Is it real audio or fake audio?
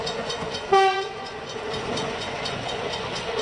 fake